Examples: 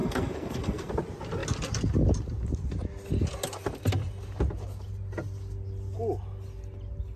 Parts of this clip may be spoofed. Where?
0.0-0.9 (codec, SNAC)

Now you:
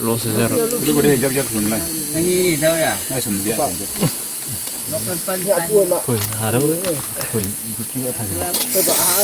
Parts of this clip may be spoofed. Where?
2.4-3.6 (vocoder, BigVGAN v2)

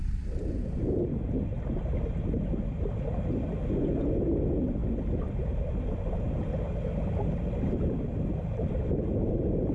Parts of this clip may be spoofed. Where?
none

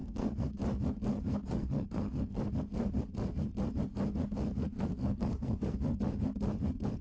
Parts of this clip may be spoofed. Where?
0.0-0.6 (codec, SNAC); 1.1-2.4; 4.6-6.0

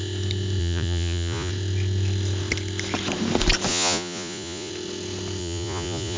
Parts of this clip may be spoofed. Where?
0.6-1.5 (vocoder, Vocos); 3.7-4.7; 5.4-6.2